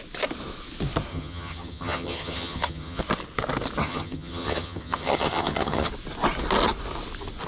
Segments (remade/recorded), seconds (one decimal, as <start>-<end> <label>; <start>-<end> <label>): 0.0-1.1 recorded; 1.1-3.0 remade; 3.0-3.8 recorded; 3.8-5.9 remade; 5.9-7.5 recorded